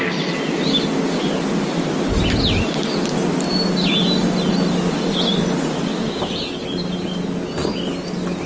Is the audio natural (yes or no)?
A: yes